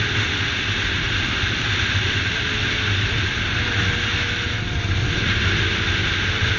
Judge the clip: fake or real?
real